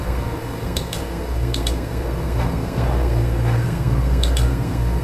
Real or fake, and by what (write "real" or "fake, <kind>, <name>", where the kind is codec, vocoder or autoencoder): fake, codec, SNAC